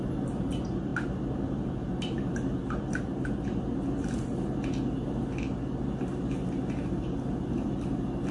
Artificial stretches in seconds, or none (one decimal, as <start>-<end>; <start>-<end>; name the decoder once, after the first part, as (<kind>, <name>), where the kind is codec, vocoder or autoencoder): none